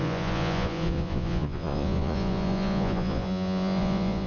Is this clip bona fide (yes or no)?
no